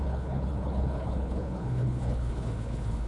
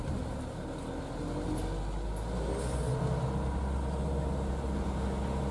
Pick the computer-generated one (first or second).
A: first